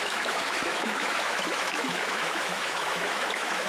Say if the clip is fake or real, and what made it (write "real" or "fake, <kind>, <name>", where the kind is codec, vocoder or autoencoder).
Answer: fake, autoencoder, DAC-VAE